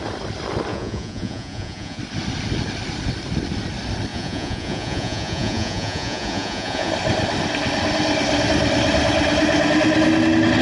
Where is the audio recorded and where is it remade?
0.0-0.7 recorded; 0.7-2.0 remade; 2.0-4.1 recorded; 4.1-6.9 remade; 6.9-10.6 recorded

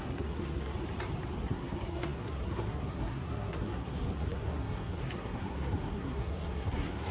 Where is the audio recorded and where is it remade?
0.0-0.7 remade; 0.7-1.4 recorded; 1.4-7.1 remade

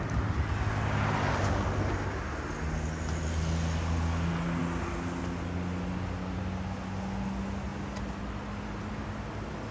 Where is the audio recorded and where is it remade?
0.0-9.7 recorded

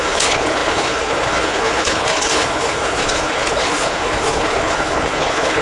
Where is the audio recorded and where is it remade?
0.0-5.6 remade

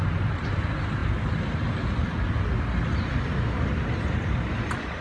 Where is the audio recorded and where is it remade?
0.0-5.0 recorded

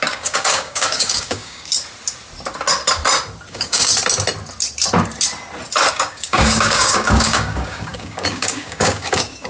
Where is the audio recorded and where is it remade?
0.0-1.7 remade; 1.7-3.5 recorded; 3.5-3.9 remade; 3.9-5.9 recorded; 5.9-9.5 remade